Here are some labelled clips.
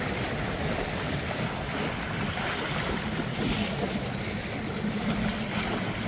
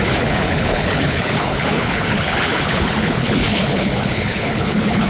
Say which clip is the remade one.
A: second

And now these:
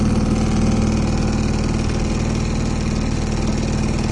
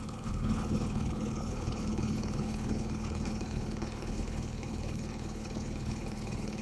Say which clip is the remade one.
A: second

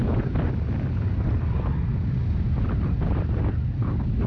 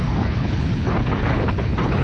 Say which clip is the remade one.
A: second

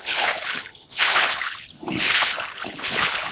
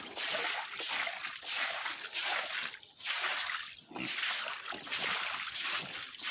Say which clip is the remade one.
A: first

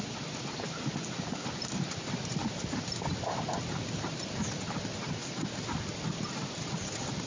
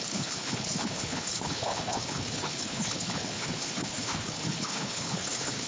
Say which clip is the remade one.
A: second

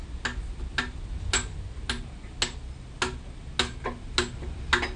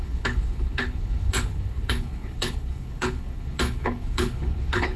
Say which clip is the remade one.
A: second